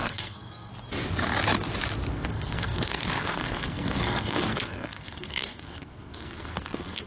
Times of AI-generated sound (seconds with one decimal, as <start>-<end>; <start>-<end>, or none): 0.0-0.7; 2.1-7.1